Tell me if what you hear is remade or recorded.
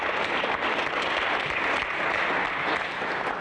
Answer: recorded